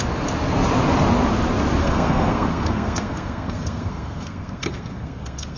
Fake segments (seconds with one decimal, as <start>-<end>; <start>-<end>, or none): 1.8-5.6

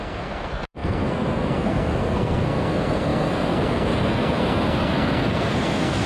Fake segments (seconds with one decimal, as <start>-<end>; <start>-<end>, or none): 0.0-6.1

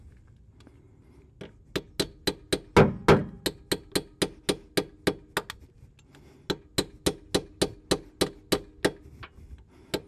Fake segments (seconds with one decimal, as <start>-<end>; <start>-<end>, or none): none